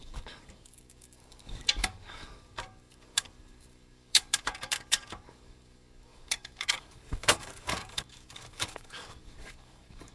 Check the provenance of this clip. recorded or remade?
remade